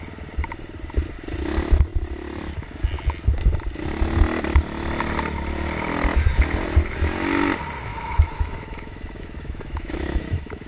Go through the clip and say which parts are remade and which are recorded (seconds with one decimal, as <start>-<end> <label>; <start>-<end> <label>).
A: 0.0-7.9 recorded; 7.9-10.7 remade